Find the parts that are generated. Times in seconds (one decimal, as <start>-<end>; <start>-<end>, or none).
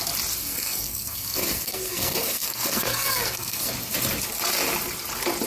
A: 0.4-3.7